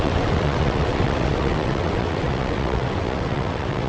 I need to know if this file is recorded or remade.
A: remade